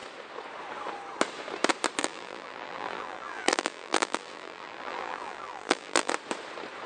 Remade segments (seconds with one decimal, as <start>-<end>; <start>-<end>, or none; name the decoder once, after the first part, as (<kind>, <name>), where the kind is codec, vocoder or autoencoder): 2.0-6.1 (vocoder, BigVGAN v2)